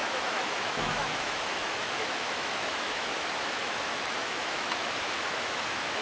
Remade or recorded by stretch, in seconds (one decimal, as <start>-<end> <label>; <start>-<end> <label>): 0.0-6.0 remade